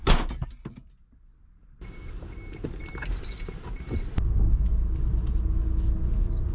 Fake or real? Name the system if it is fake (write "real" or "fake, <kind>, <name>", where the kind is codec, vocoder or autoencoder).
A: real